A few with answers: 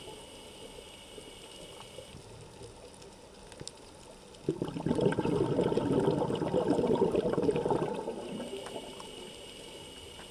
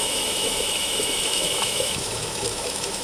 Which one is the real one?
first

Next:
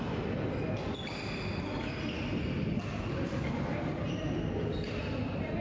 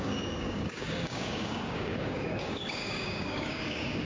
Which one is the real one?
first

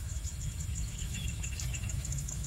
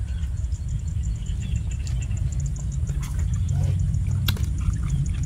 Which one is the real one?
second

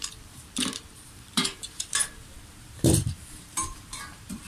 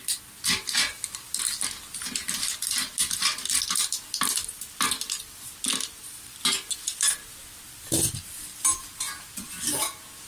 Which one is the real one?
second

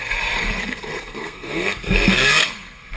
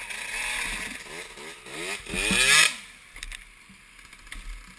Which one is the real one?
second